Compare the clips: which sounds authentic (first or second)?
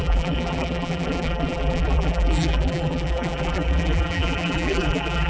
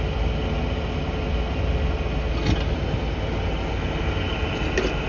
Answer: second